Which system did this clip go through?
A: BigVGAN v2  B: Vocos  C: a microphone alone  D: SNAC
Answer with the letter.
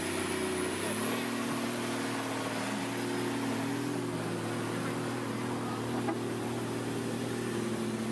C